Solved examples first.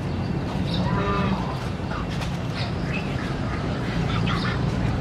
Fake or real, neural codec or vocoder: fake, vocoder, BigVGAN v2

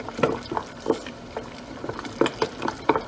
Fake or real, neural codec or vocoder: fake, vocoder, BigVGAN v2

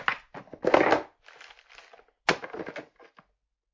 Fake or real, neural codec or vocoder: real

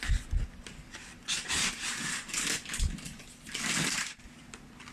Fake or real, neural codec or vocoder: real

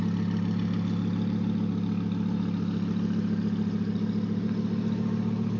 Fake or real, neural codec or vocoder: real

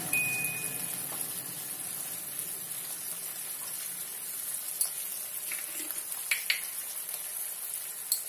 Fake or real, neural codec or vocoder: real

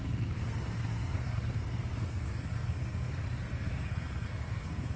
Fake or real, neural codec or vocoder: fake, codec, SNAC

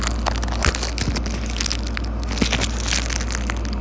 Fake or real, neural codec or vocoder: real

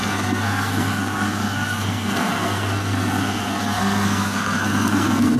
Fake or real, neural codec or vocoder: fake, codec, SNAC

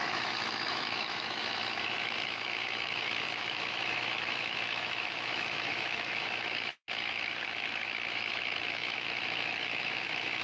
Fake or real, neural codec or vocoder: fake, autoencoder, DAC-VAE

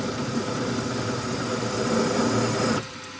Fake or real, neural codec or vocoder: real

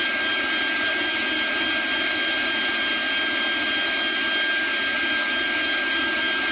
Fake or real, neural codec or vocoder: real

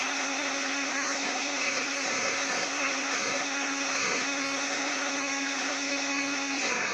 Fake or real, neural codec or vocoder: fake, codec, SNAC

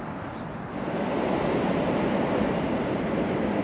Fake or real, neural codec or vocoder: real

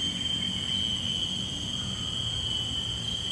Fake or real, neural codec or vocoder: real